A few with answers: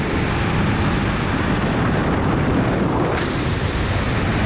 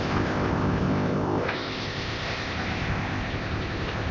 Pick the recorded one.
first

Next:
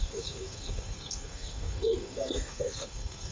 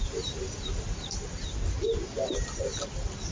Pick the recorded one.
second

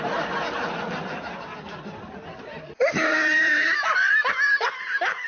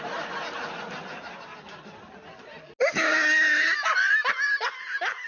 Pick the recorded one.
second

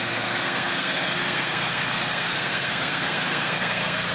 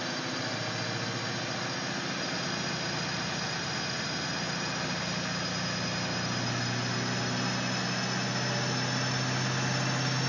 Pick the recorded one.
second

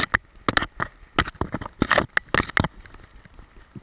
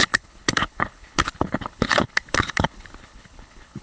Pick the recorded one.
first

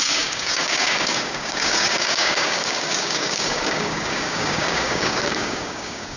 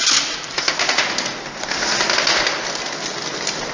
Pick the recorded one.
second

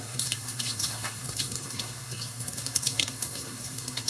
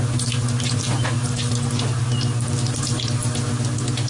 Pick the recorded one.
second